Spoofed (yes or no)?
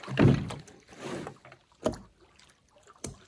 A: no